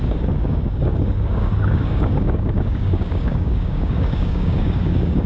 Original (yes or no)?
no